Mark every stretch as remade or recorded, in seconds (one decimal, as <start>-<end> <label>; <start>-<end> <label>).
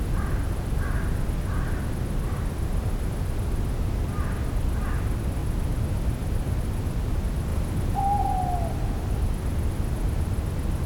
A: 0.0-10.9 recorded